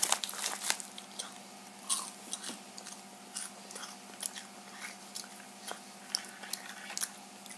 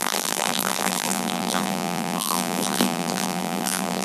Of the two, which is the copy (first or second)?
second